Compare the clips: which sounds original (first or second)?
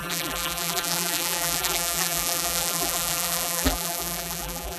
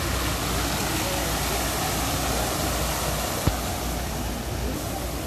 second